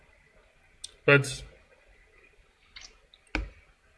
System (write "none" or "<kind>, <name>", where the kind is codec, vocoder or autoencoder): none